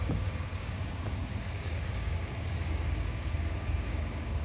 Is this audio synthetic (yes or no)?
yes